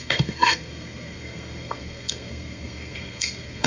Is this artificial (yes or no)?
yes